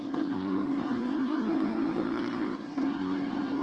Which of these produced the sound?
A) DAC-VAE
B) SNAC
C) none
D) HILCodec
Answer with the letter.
B